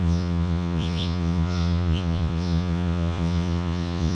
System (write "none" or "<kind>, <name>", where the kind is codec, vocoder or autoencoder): vocoder, Vocos